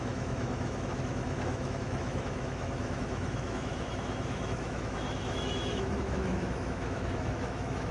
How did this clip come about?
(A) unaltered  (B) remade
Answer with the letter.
B